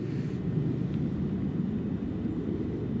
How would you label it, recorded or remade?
recorded